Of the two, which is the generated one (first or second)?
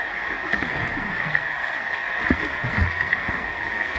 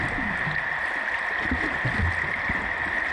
first